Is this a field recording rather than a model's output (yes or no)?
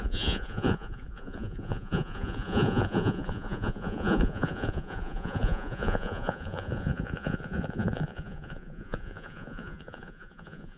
no